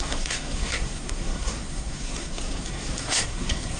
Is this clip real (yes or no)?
no